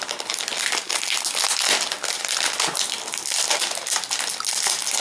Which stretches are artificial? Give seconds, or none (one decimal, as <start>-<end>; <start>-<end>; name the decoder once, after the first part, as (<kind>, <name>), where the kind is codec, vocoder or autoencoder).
none